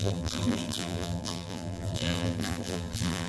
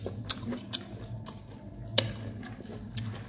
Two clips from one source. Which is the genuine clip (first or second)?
second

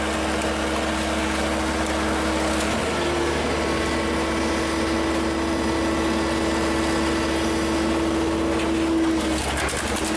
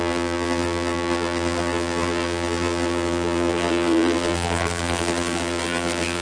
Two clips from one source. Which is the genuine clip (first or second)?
first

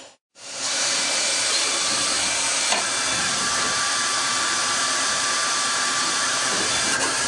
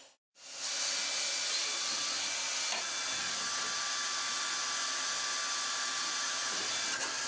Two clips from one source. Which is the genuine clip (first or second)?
second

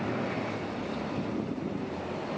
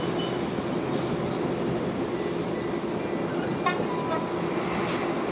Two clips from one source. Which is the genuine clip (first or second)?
second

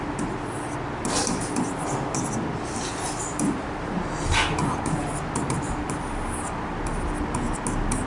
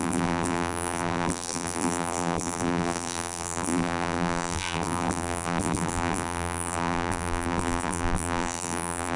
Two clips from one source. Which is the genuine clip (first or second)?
first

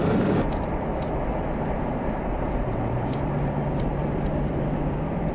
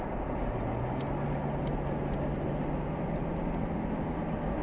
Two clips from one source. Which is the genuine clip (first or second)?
second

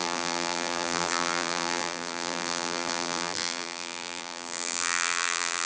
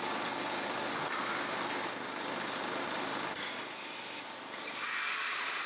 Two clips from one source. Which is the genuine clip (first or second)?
second